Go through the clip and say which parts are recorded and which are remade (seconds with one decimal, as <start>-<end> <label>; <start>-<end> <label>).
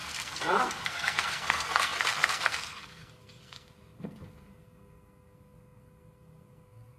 0.0-7.0 remade